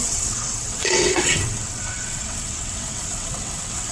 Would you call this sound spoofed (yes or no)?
yes